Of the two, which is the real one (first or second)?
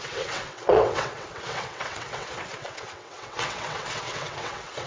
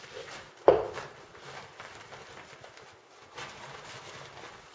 second